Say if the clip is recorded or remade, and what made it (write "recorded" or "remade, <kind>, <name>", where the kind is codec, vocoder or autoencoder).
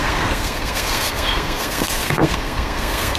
remade, codec, SNAC